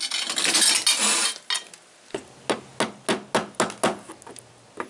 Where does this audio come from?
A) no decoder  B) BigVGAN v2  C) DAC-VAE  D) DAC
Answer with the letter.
A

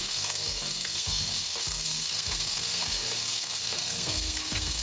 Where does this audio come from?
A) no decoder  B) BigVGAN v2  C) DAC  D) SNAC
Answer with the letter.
D